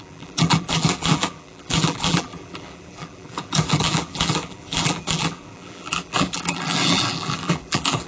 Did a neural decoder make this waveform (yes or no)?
yes